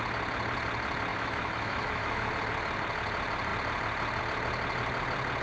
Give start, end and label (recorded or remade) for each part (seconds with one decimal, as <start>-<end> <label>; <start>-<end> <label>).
0.0-1.1 recorded; 1.1-2.3 remade; 2.3-5.4 recorded